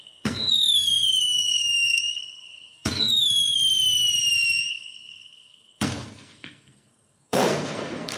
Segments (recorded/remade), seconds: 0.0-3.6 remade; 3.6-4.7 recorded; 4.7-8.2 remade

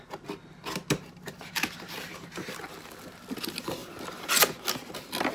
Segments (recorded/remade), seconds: 0.0-5.3 recorded

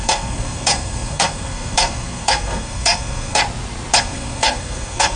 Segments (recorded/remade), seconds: 0.0-3.4 remade; 3.4-4.0 recorded; 4.0-5.2 remade

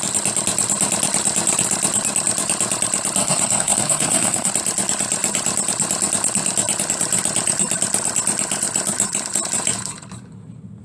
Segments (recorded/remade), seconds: 0.0-3.2 recorded; 3.2-4.5 remade; 4.5-10.8 recorded

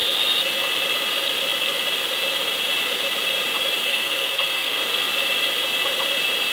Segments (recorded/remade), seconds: 0.0-3.8 recorded; 3.8-4.8 remade; 4.8-6.5 recorded

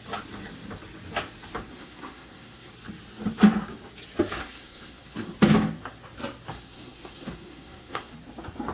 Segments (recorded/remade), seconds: 0.0-1.7 recorded; 1.7-2.7 remade; 2.7-4.4 recorded; 4.4-5.3 remade; 5.3-6.5 recorded; 6.5-8.1 remade; 8.1-8.7 recorded

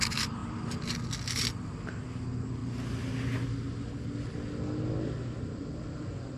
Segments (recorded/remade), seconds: 0.0-6.4 recorded

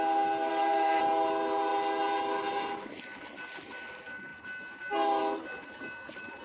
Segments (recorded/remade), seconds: 0.0-0.5 recorded; 0.5-1.0 remade; 1.0-6.4 recorded